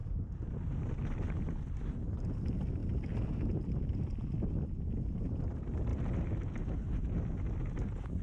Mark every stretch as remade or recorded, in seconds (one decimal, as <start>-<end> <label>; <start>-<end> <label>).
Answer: 0.0-8.2 recorded